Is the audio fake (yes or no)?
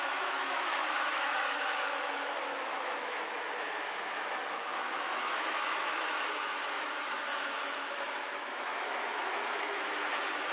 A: yes